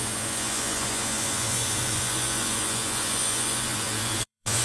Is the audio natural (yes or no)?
no